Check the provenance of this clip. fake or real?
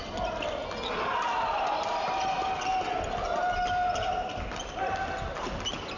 real